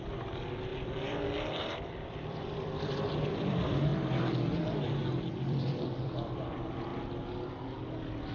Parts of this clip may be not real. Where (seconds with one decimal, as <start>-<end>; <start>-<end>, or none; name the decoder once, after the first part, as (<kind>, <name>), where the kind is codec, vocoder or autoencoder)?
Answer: 0.0-3.9 (vocoder, BigVGAN v2); 5.4-6.9